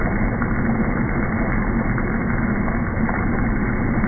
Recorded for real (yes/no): yes